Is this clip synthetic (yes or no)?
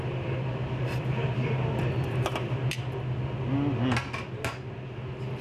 no